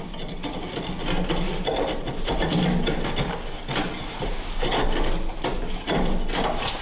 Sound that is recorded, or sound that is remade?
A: recorded